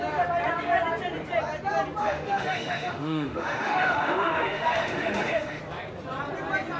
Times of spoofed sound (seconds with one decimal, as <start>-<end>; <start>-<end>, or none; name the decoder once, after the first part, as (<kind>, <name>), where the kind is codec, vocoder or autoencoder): 2.0-5.6 (autoencoder, DAC-VAE)